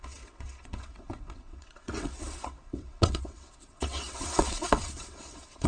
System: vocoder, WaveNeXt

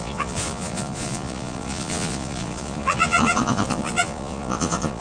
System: vocoder, Vocos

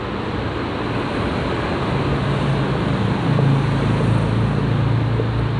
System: none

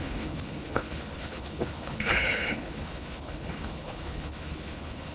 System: codec, HILCodec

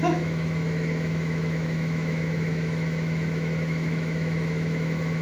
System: autoencoder, DAC-VAE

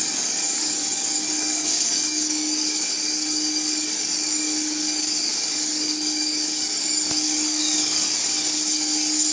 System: codec, DAC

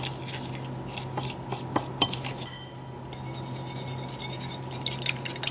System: none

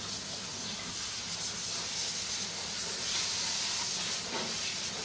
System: none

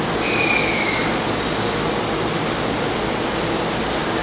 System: none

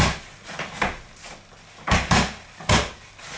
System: none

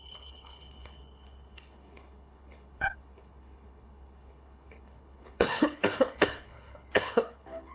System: codec, HILCodec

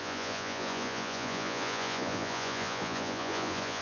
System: vocoder, Vocos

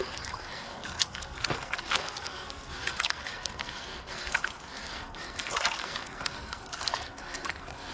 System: codec, SNAC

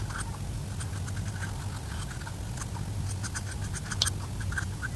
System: none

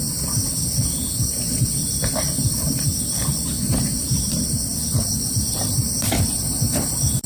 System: vocoder, BigVGAN v2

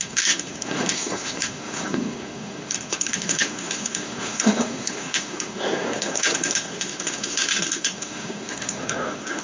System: codec, SNAC